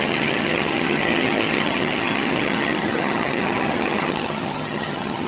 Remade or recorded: remade